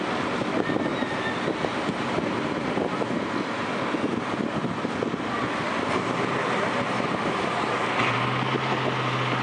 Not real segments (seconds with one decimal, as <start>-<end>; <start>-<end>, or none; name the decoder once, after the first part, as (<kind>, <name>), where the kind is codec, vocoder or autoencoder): none

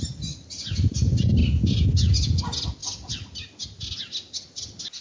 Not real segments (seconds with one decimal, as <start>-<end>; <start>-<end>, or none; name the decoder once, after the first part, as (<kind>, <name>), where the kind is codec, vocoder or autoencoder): none

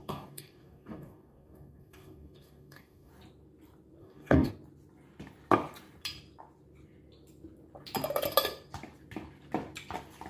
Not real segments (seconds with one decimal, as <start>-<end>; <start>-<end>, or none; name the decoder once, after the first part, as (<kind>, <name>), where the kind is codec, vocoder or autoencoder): 0.0-3.1 (codec, DAC); 4.0-4.5

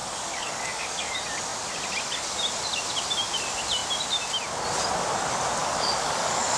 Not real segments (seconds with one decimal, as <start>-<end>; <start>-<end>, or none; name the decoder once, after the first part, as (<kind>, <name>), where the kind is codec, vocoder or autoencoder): 0.0-1.1 (codec, DAC); 5.6-6.6

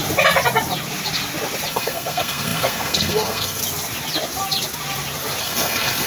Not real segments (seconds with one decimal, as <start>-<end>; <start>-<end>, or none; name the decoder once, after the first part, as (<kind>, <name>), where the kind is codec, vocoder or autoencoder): 1.7-3.6 (codec, SNAC); 5.4-6.1

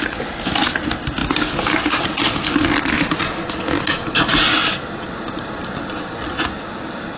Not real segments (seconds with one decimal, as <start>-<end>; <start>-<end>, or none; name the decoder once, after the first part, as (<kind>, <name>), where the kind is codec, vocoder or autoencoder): none

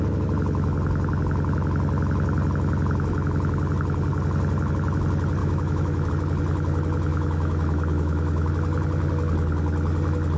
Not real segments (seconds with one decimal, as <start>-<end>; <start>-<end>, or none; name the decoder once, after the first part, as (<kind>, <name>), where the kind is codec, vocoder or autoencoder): 5.4-6.1 (autoencoder, DAC-VAE); 7.1-8.5

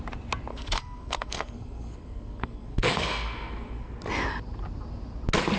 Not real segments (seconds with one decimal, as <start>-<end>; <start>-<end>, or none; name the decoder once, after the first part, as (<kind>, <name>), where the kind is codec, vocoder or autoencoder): 0.5-3.9 (codec, SNAC)